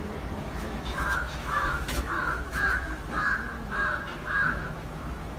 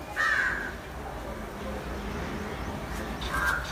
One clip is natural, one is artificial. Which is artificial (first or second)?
first